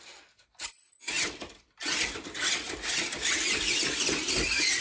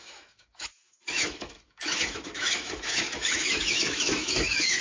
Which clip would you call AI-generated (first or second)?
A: second